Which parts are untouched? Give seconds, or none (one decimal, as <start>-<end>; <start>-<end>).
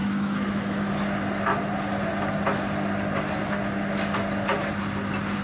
0.9-5.4